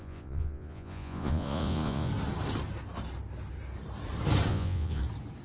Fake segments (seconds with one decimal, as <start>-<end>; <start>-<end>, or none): 0.0-2.1; 4.5-5.0